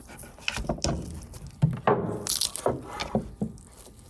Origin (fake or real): real